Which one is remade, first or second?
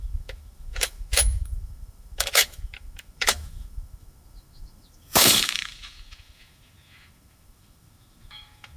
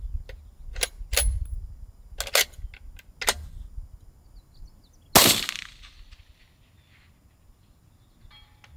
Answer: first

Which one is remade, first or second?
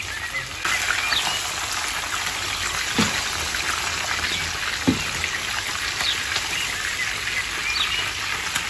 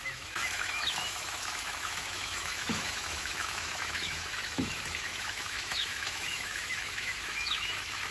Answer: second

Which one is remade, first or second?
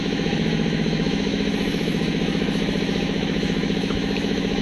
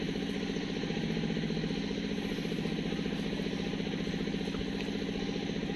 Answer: first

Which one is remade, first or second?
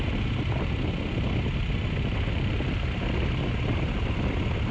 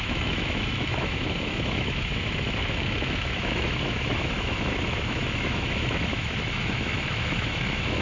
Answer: second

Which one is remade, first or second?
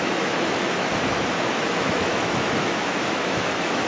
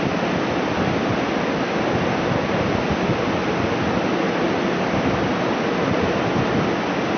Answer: first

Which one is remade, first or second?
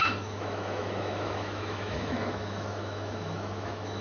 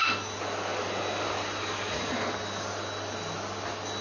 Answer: first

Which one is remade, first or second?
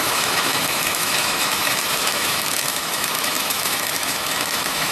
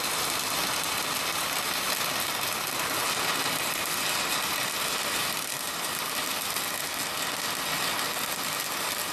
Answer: first